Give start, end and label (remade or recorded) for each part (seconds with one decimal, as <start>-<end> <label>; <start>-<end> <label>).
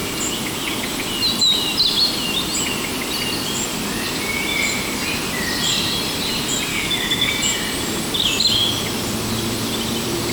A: 0.0-6.7 recorded; 6.7-7.3 remade; 7.3-10.3 recorded